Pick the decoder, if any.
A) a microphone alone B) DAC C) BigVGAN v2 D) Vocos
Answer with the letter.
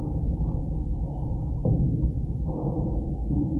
C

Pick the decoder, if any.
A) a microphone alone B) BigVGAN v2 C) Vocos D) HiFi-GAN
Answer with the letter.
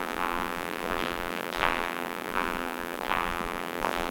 B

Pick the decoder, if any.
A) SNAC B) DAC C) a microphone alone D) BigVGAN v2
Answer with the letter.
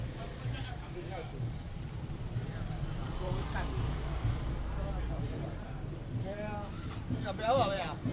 D